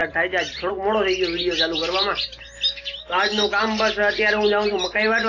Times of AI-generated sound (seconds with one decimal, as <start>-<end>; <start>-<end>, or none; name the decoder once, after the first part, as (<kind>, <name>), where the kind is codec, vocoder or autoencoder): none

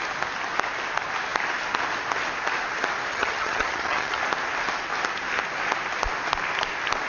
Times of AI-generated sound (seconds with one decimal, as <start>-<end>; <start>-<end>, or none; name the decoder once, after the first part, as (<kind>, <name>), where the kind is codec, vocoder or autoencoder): 3.1-4.2 (vocoder, HiFi-GAN)

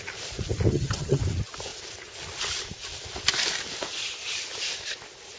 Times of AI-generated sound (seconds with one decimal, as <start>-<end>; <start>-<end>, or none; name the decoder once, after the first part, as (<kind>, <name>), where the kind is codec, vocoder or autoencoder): 0.7-1.2 (vocoder, HiFi-GAN)